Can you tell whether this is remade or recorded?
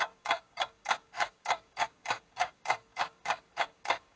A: remade